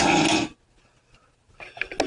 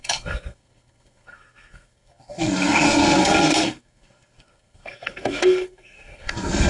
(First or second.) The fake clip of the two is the second